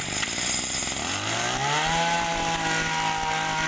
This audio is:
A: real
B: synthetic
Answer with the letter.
A